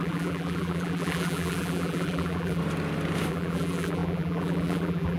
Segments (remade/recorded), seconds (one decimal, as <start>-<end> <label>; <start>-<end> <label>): 0.0-2.6 remade; 2.6-3.3 recorded; 3.3-5.2 remade